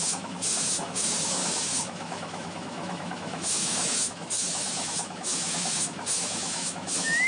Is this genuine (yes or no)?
no